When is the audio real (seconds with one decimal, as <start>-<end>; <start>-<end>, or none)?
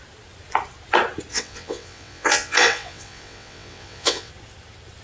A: 0.0-1.3; 4.3-5.0